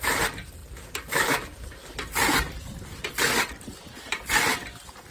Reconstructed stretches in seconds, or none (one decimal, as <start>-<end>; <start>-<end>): none